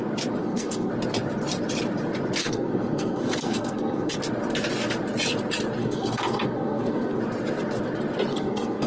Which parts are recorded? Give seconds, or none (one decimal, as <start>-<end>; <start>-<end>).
0.0-0.4; 0.9-2.4; 4.2-5.8; 7.2-8.3